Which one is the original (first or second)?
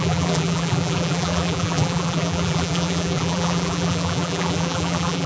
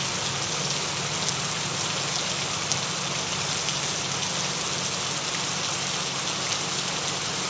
second